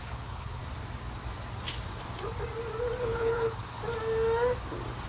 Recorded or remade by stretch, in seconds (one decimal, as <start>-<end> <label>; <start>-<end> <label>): 0.0-0.6 remade; 0.6-3.0 recorded; 3.0-3.8 remade; 3.8-5.1 recorded